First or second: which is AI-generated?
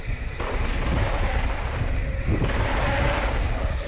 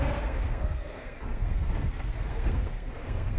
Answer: second